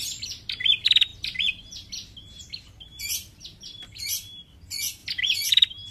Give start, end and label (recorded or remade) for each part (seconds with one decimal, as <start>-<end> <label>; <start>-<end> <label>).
0.0-5.0 remade; 5.0-5.5 recorded; 5.5-5.9 remade